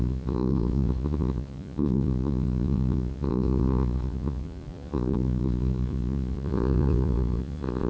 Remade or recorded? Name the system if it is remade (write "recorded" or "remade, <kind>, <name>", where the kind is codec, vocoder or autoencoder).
remade, vocoder, Vocos